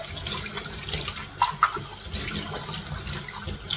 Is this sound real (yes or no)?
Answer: yes